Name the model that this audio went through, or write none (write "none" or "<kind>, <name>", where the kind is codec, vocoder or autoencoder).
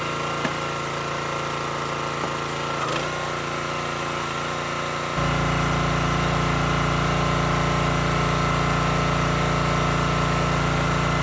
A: none